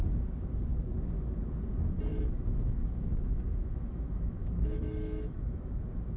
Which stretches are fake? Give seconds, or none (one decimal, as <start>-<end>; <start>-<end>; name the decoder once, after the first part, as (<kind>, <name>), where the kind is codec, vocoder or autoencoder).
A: 2.1-5.8 (autoencoder, DAC-VAE)